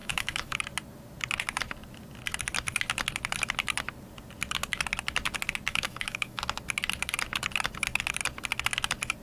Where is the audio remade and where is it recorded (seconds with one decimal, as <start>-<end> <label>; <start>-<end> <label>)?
0.0-0.6 remade; 0.6-5.7 recorded; 5.7-6.4 remade; 6.4-9.2 recorded